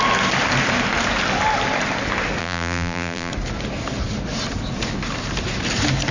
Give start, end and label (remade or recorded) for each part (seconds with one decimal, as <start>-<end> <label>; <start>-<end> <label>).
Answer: 0.0-2.4 recorded; 2.4-3.3 remade; 3.3-6.1 recorded